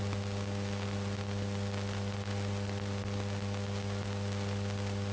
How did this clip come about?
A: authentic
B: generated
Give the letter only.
A